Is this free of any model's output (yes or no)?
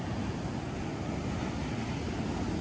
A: yes